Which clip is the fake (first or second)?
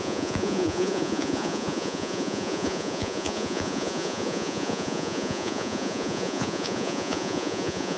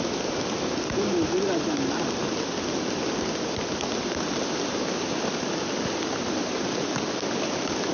first